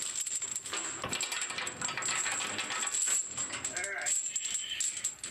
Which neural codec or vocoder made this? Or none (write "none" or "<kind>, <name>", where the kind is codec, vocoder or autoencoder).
none